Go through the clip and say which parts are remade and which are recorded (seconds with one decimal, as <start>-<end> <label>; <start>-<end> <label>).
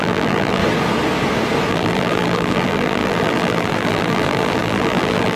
0.0-0.6 remade; 0.6-1.7 recorded; 1.7-5.4 remade